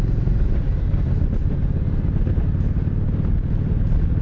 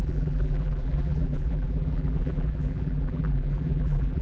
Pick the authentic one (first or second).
first